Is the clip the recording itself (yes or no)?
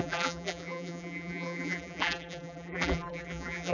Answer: no